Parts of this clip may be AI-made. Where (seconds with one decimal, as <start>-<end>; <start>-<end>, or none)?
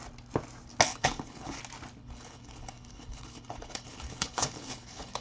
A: 0.9-1.6; 2.0-5.2